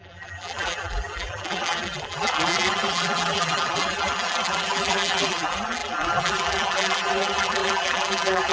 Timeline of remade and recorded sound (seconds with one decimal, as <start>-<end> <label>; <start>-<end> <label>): 0.0-8.5 remade